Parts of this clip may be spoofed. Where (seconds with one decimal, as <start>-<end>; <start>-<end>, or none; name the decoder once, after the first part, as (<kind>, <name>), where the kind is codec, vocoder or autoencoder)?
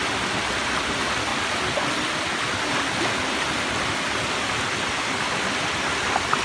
none